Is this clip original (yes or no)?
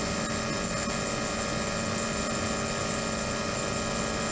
yes